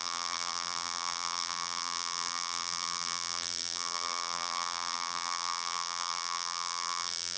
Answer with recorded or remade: remade